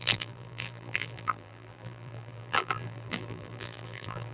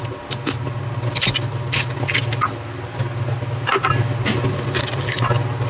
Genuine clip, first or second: second